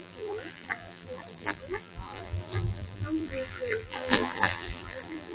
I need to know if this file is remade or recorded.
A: remade